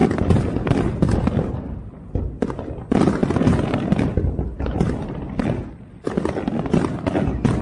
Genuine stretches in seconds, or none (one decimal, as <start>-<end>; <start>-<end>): 1.6-7.6